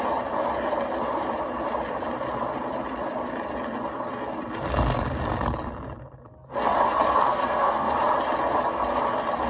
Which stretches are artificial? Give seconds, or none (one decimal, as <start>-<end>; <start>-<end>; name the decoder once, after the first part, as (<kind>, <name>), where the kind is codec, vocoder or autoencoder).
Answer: 7.3-7.9 (codec, SNAC)